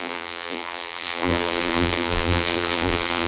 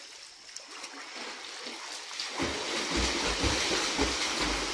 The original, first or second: second